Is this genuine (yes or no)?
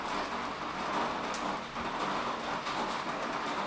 yes